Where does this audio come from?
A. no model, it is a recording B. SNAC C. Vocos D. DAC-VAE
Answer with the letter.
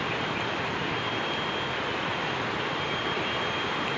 A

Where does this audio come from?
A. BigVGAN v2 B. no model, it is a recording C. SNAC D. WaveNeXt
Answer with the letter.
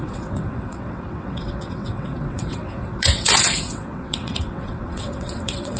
D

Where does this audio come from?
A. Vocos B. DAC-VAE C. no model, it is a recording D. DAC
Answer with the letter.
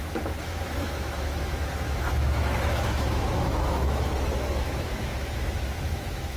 B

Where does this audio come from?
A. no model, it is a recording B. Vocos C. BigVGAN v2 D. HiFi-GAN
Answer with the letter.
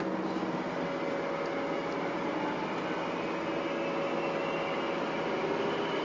A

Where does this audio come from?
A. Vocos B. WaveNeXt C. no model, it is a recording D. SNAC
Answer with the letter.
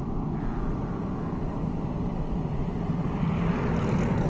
C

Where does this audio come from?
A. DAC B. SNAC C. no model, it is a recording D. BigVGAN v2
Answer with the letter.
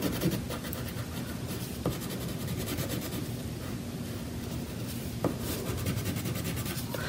D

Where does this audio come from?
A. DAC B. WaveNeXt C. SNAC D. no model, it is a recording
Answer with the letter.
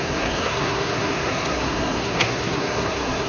C